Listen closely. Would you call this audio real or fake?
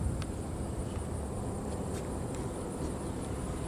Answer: fake